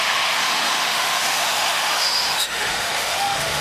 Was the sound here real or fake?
fake